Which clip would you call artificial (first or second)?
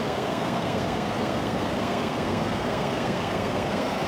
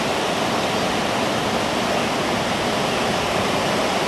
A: first